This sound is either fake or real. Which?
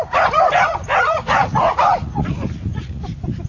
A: fake